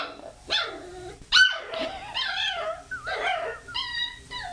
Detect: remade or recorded recorded